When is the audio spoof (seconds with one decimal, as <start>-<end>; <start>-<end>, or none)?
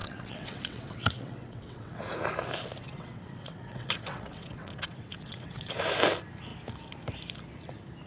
0.0-2.0; 2.8-5.8